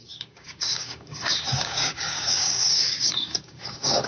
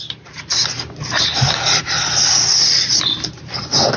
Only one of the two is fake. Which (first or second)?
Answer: first